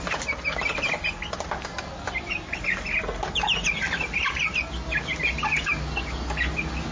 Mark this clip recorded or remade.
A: recorded